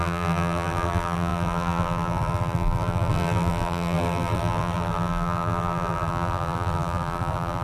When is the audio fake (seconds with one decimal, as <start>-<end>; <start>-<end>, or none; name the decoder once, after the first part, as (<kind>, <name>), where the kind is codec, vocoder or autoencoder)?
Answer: 0.0-7.6 (vocoder, BigVGAN v2)